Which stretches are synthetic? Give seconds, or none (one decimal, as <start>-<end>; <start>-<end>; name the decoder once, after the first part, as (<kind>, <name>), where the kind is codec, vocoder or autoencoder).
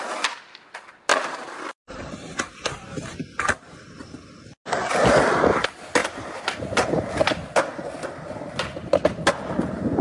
1.1-4.1 (vocoder, BigVGAN v2); 6.0-7.1